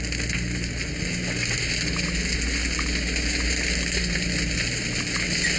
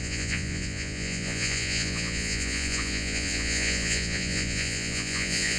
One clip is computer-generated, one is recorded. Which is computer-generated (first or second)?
second